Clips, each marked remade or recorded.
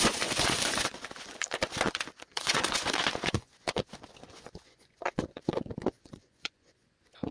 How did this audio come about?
remade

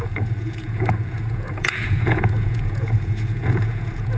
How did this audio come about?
remade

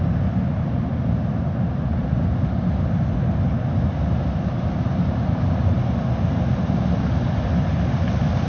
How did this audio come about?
recorded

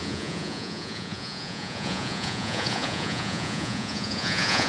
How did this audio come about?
remade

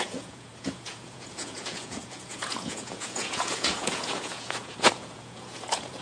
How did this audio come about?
remade